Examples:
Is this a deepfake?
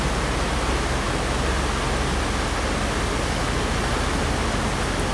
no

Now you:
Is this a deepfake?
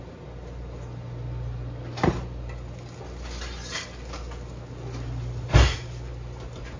no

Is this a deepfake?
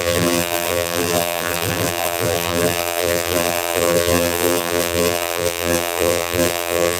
yes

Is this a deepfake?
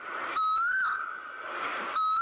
no